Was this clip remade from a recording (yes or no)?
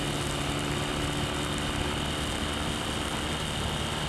no